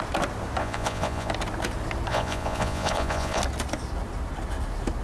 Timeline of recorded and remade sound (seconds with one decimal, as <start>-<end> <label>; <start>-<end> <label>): 0.0-0.6 recorded; 0.6-1.3 remade; 1.3-2.1 recorded; 2.1-3.4 remade; 3.4-5.0 recorded

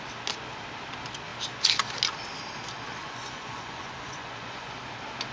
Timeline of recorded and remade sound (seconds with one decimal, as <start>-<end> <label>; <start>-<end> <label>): 0.0-3.0 recorded; 3.0-4.8 remade; 4.8-5.3 recorded

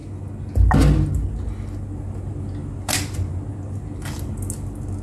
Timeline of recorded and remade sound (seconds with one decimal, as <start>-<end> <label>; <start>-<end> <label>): 0.0-5.0 recorded

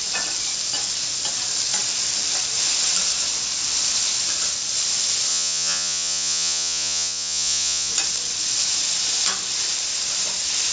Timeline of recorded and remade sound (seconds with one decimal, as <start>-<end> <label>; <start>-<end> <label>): 0.0-5.3 recorded; 5.3-7.9 remade; 7.9-10.7 recorded

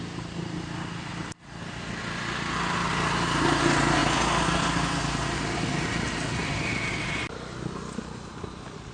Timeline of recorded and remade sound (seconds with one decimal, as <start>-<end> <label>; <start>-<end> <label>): 0.0-8.9 recorded

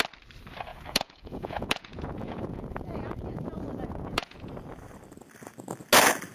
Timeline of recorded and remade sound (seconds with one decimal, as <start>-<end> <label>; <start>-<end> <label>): 0.0-0.7 recorded; 0.7-4.5 remade; 4.5-6.3 recorded

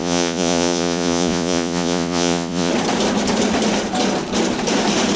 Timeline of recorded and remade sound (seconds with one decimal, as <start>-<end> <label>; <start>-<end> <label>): 0.0-2.7 remade; 2.7-5.2 recorded

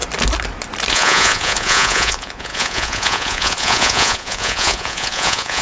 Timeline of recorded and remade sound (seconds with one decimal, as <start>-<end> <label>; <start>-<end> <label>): 0.0-0.9 recorded; 0.9-5.6 remade